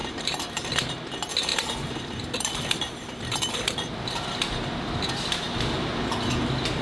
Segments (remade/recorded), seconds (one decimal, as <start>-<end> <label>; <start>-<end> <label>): 0.0-0.9 remade; 0.9-1.5 recorded; 1.5-5.1 remade; 5.1-6.8 recorded